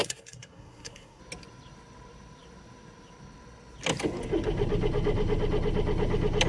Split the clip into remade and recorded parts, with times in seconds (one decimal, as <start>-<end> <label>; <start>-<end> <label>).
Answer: 0.0-1.2 remade; 1.2-6.5 recorded